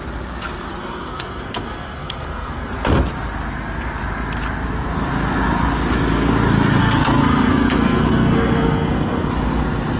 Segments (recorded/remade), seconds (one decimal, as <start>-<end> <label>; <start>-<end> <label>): 0.0-0.7 recorded; 0.7-2.7 remade; 2.7-6.8 recorded; 6.8-9.3 remade; 9.3-10.0 recorded